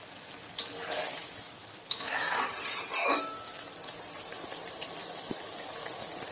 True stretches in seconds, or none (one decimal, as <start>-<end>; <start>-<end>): 0.0-1.2; 2.5-3.0; 3.7-5.0; 5.8-6.3